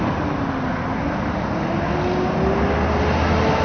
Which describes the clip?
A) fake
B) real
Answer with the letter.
B